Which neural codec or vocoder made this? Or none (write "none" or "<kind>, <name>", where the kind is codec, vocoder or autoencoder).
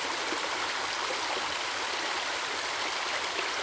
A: none